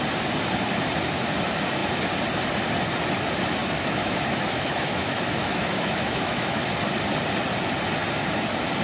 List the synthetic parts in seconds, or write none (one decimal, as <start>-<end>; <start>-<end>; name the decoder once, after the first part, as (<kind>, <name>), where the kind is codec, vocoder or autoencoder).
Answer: 3.6-6.7 (autoencoder, DAC-VAE)